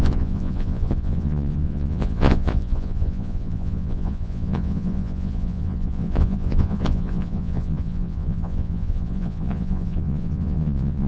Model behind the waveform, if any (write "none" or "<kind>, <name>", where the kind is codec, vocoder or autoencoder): vocoder, Vocos